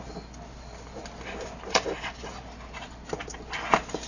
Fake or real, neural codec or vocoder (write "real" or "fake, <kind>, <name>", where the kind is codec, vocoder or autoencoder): real